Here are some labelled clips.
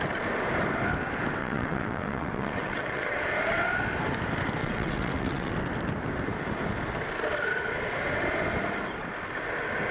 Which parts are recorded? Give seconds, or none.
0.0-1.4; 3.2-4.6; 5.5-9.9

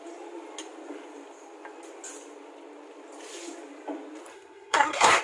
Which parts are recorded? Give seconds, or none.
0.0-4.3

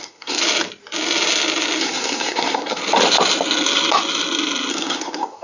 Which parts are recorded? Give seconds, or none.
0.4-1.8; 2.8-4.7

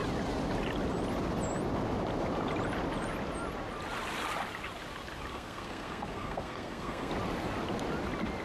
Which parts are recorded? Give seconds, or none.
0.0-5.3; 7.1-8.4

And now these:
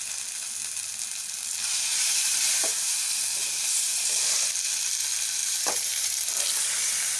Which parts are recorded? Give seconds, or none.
0.0-1.9; 3.0-3.4; 4.4-5.4; 6.1-7.2

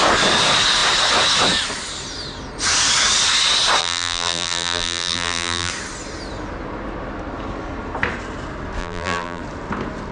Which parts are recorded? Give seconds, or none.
0.0-3.8; 5.7-8.8; 9.4-10.1